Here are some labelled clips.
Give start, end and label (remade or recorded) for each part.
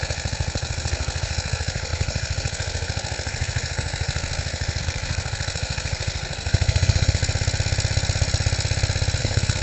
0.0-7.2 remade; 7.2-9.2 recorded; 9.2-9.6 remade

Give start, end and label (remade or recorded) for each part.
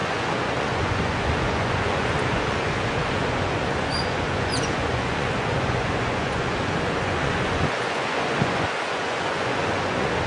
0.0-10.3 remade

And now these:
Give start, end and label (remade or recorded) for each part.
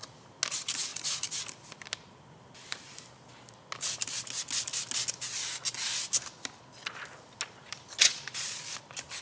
0.0-8.0 recorded; 8.0-8.6 remade; 8.6-9.2 recorded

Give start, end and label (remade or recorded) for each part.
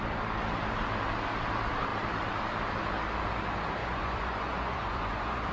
0.0-3.8 recorded; 3.8-5.5 remade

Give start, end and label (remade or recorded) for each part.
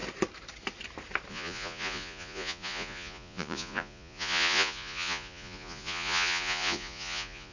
0.0-1.3 recorded; 1.3-7.5 remade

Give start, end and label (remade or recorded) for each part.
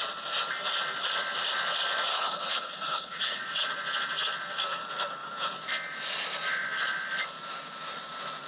0.0-2.1 recorded; 2.1-3.4 remade; 3.4-8.5 recorded